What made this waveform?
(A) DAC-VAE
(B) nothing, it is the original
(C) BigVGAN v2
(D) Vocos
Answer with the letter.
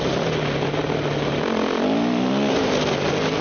B